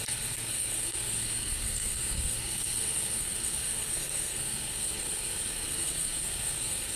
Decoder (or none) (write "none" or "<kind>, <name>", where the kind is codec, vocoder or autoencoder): codec, SNAC